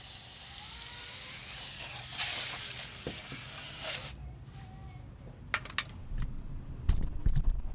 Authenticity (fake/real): real